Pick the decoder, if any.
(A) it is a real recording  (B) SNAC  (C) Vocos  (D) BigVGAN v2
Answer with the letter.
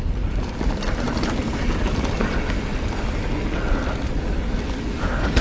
A